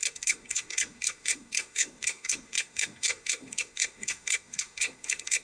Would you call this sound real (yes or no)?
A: no